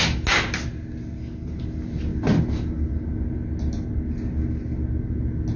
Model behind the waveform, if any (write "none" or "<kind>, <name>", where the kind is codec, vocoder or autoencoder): none